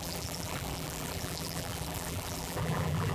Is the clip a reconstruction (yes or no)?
yes